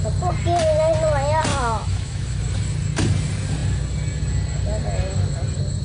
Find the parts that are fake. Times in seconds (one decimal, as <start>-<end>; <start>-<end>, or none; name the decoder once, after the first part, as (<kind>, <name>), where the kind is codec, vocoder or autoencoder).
1.5-2.4 (autoencoder, DAC-VAE)

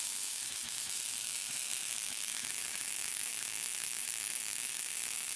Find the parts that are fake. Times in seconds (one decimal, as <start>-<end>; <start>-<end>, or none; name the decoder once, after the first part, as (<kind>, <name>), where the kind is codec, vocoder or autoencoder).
0.0-5.4 (autoencoder, DAC-VAE)

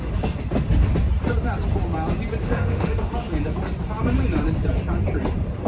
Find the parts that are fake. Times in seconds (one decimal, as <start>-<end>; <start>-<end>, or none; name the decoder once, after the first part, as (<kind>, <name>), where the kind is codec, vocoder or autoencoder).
2.4-3.1 (autoencoder, DAC-VAE)

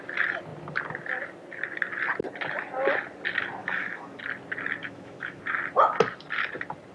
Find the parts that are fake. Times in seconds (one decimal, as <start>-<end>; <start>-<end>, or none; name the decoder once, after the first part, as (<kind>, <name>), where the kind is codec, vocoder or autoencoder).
3.6-4.2 (autoencoder, DAC-VAE); 4.8-5.4

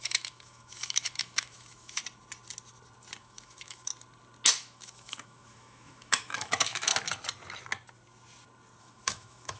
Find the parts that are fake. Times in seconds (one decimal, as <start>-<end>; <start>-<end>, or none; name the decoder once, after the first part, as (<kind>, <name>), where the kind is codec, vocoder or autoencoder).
0.0-2.0 (autoencoder, DAC-VAE); 3.2-3.9; 4.5-6.9; 8.8-9.6

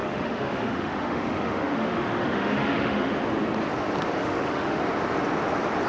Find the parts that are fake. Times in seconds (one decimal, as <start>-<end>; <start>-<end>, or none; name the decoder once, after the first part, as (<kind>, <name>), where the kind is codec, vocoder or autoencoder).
0.0-3.1 (autoencoder, DAC-VAE); 4.2-4.8

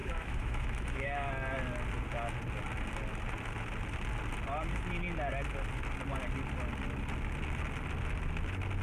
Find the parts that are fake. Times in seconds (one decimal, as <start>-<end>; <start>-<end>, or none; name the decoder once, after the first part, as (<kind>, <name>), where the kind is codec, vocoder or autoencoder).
0.0-1.3 (autoencoder, DAC-VAE)